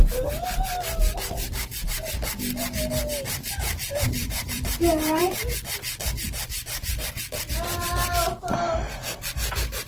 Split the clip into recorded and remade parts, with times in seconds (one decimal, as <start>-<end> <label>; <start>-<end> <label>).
0.0-4.2 recorded; 4.2-5.2 remade; 5.2-9.9 recorded